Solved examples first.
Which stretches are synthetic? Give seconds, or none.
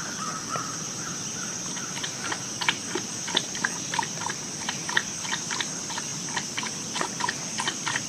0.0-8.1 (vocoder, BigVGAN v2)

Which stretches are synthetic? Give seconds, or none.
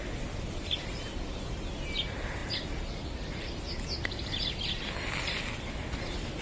none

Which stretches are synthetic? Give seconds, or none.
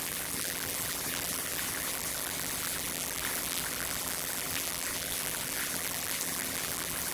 0.0-7.1 (vocoder, BigVGAN v2)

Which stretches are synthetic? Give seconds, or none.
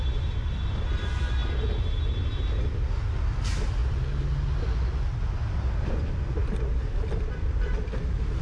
0.0-1.4 (vocoder, BigVGAN v2); 2.7-3.8; 5.5-8.4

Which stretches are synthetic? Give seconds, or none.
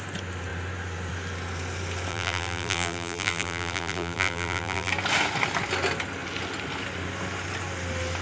2.1-4.9 (vocoder, BigVGAN v2)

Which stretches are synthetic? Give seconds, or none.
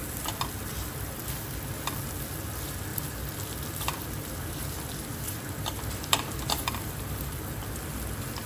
0.0-1.9 (vocoder, BigVGAN v2); 2.9-7.5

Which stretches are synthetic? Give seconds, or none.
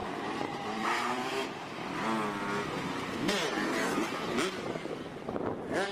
0.0-1.7 (vocoder, BigVGAN v2)